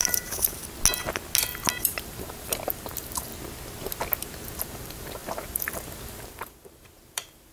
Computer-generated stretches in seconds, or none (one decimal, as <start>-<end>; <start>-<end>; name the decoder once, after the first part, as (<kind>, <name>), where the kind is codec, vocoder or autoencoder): 0.0-0.6 (vocoder, BigVGAN v2); 1.8-3.3; 4.6-7.5